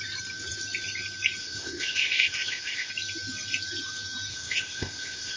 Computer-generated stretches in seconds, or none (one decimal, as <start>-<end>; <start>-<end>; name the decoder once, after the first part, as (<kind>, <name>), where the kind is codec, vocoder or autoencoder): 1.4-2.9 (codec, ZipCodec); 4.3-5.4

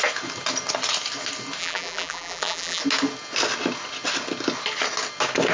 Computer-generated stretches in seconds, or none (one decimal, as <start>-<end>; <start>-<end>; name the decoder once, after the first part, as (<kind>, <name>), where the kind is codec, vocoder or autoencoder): 1.6-2.8 (vocoder, BigVGAN v2)

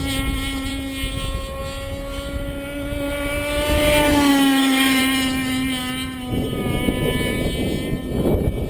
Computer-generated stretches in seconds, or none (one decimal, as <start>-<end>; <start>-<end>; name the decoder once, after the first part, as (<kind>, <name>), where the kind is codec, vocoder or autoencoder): 4.3-5.0 (autoencoder, DAC-VAE)

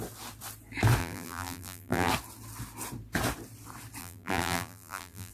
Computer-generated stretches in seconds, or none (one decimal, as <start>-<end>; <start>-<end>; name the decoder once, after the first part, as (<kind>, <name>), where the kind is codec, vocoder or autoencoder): 1.0-2.1 (vocoder, BigVGAN v2); 4.0-5.3

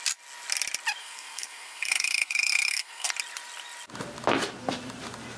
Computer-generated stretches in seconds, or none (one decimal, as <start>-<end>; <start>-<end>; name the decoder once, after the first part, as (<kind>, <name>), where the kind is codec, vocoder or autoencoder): 1.0-3.1 (codec, SNAC)

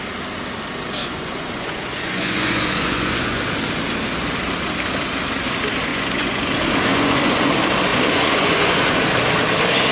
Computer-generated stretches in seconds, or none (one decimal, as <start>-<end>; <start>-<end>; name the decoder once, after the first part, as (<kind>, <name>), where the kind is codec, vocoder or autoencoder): 1.0-3.4 (vocoder, Vocos); 5.9-6.5; 6.9-7.5; 7.9-9.0

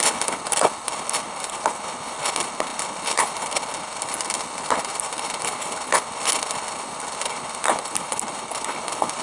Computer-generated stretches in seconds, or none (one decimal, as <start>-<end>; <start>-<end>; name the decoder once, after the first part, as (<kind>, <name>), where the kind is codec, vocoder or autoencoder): 0.0-9.2 (codec, HILCodec)

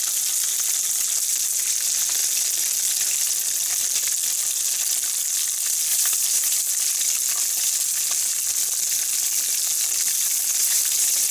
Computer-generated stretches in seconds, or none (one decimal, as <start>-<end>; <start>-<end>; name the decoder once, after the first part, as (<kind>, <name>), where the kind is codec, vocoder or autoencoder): 5.9-6.6 (vocoder, BigVGAN v2); 10.6-11.3